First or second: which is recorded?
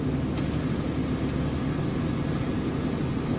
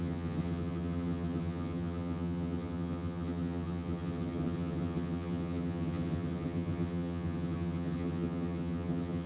first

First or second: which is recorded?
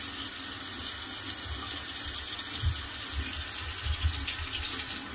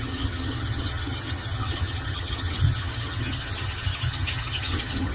first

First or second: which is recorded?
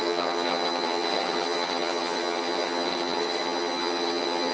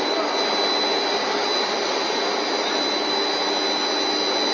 second